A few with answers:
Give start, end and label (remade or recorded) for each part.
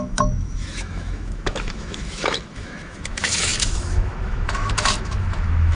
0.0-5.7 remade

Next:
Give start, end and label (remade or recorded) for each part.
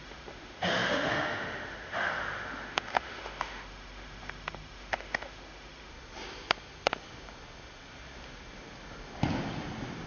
0.0-5.9 remade; 5.9-10.1 recorded